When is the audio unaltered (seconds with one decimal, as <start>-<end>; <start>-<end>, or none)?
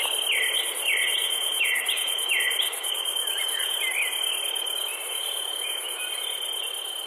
0.0-1.2; 3.8-4.9; 6.2-7.1